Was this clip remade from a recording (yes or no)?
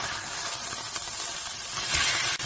no